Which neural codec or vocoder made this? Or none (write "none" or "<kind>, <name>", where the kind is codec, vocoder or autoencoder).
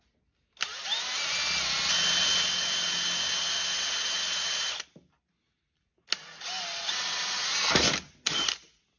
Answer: none